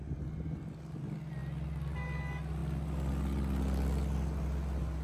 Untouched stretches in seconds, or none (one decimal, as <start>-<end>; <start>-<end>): 0.0-5.0